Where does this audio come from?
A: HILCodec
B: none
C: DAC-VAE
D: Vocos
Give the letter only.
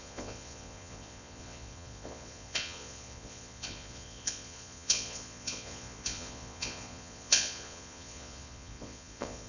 D